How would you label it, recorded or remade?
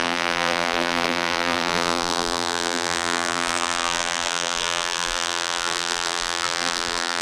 remade